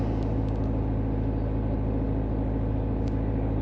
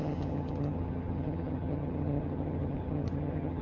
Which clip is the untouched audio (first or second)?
first